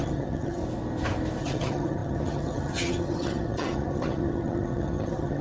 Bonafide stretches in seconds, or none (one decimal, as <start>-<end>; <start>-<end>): 0.6-1.4